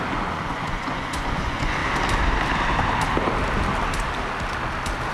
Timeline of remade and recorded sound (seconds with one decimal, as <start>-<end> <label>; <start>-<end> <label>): 0.0-1.8 remade; 1.8-5.1 recorded

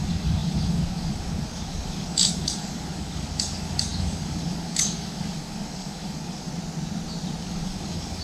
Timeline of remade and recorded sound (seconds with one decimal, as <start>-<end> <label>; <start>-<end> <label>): 0.0-6.5 remade; 6.5-7.4 recorded; 7.4-8.2 remade

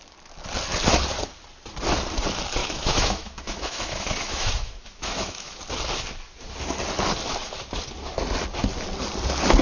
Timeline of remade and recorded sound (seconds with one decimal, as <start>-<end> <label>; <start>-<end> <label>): 0.0-2.6 recorded; 2.6-5.6 remade; 5.6-9.6 recorded

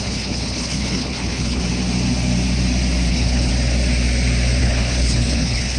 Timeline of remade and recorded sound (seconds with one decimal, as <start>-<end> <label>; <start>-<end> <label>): 0.0-1.6 remade; 1.6-3.1 recorded; 3.1-3.5 remade; 3.5-4.6 recorded; 4.6-5.8 remade